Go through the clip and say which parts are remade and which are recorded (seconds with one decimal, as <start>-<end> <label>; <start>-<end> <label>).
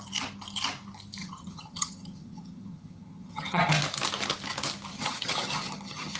0.0-1.2 recorded; 1.2-3.7 remade; 3.7-4.9 recorded; 4.9-6.2 remade